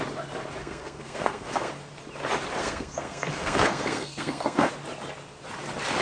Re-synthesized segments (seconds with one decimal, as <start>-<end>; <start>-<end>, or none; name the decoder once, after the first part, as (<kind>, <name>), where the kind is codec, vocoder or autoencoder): 0.6-1.7 (codec, SNAC); 2.6-4.7